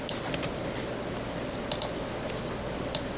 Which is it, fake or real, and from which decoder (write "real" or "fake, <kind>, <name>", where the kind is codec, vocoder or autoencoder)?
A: real